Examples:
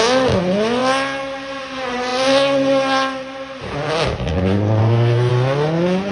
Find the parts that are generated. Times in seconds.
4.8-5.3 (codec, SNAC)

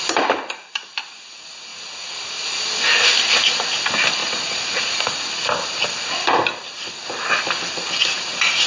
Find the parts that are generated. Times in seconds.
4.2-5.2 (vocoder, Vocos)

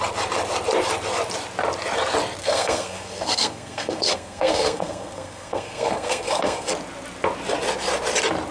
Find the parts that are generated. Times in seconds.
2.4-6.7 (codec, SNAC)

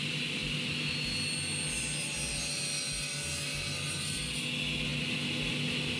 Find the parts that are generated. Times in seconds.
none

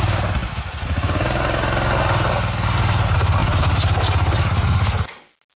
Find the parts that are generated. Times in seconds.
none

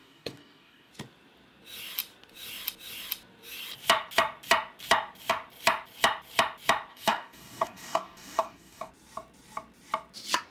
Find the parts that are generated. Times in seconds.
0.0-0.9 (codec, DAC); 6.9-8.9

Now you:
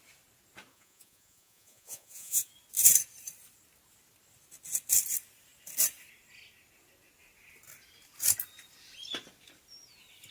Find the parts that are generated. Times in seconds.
0.7-2.5 (vocoder, Vocos)